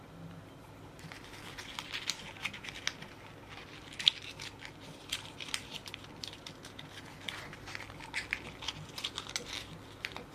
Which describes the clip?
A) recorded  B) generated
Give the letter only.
A